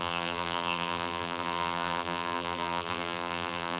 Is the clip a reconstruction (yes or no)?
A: yes